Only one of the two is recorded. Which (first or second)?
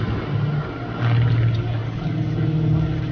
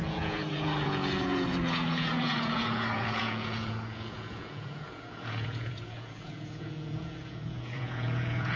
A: first